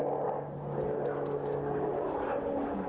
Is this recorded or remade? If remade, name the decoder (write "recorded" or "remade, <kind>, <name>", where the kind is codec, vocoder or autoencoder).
recorded